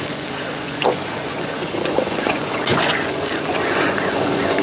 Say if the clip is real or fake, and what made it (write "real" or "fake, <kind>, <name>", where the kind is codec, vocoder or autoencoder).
fake, vocoder, Vocos